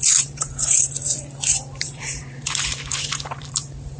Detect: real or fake fake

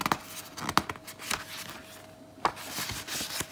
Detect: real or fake real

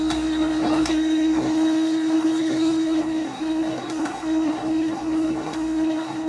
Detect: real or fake fake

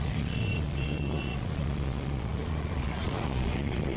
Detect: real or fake fake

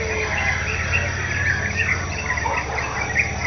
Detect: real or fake real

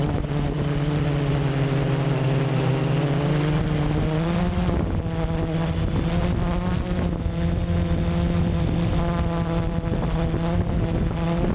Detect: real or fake real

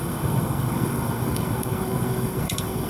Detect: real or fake fake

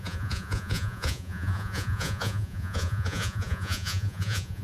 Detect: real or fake fake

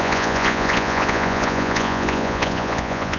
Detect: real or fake fake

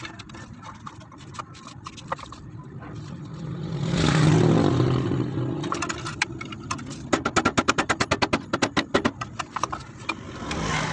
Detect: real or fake real